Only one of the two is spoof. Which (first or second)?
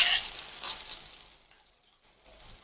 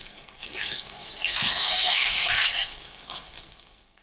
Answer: second